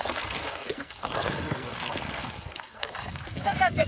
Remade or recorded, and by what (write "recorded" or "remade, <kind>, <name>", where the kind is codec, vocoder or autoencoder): remade, codec, SNAC